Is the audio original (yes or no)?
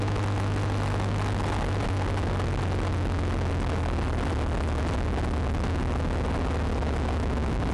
yes